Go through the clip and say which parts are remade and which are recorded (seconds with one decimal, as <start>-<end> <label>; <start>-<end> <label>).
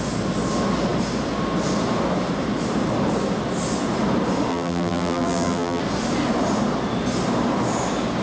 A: 0.0-4.5 recorded; 4.5-5.8 remade; 5.8-8.2 recorded